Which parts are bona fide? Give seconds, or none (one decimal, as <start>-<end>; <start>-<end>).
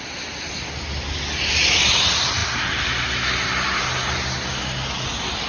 0.0-5.5